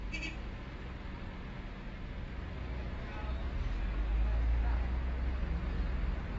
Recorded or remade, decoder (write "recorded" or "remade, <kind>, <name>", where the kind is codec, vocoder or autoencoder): recorded